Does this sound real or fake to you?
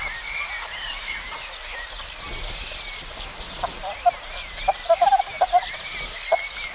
real